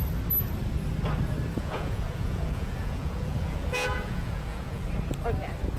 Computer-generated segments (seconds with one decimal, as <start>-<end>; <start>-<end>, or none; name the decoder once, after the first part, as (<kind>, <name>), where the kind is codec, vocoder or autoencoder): 1.6-4.9 (vocoder, Vocos)